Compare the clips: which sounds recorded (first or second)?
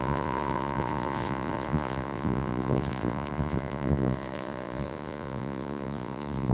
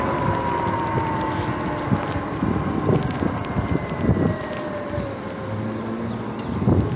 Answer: second